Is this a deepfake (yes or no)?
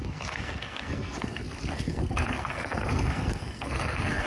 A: yes